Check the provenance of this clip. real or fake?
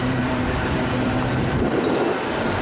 fake